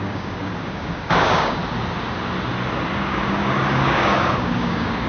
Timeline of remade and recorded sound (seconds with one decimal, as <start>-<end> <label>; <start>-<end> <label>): 0.0-1.6 remade; 1.6-3.0 recorded; 3.0-5.1 remade